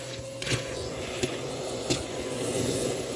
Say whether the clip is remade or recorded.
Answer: remade